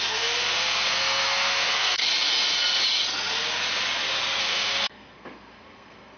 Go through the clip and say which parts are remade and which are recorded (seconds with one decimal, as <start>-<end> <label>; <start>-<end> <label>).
0.0-2.0 remade; 2.0-4.4 recorded; 4.4-6.2 remade